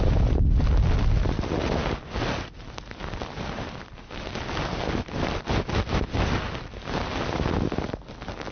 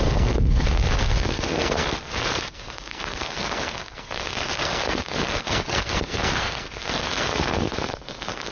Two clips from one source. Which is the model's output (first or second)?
second